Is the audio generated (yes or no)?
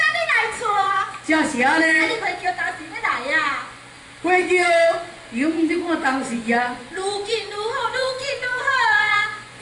yes